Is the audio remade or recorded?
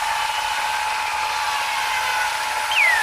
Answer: remade